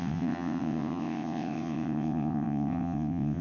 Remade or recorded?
remade